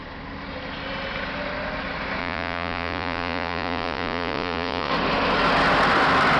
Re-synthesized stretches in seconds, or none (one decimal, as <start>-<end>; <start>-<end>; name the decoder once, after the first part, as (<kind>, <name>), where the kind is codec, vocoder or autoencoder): 2.2-4.9 (vocoder, Vocos)